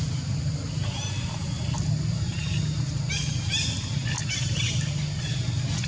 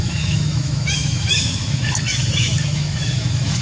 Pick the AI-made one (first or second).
second